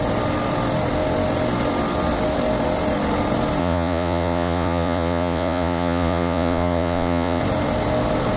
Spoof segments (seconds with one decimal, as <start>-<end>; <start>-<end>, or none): 3.6-7.4